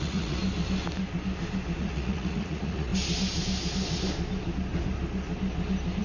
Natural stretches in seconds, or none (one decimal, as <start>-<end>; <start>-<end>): 0.4-1.8; 2.9-6.0